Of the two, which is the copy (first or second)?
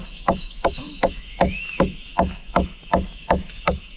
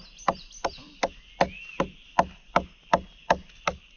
first